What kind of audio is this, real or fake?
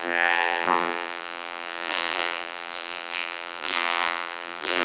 fake